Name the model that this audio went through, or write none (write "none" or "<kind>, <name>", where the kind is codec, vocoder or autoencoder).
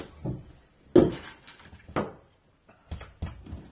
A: none